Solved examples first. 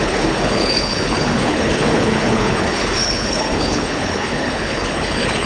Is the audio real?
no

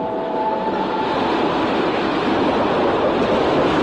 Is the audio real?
yes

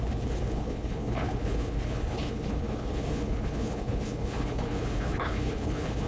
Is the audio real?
no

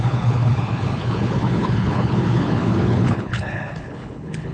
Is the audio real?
no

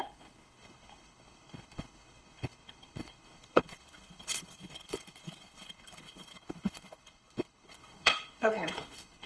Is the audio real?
no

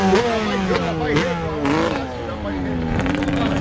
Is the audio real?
yes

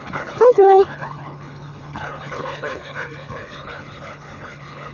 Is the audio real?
no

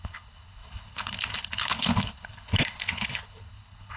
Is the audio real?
no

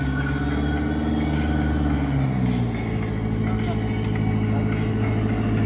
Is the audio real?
yes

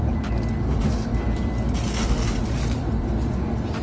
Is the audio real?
yes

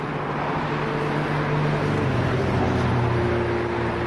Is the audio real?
yes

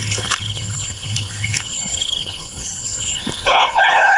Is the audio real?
no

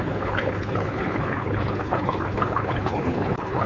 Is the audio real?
no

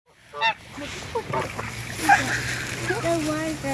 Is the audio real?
yes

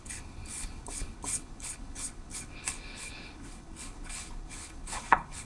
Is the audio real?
no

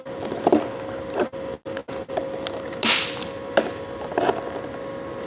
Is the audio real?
yes